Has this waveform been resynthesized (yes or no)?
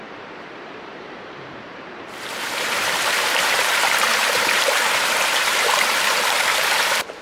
yes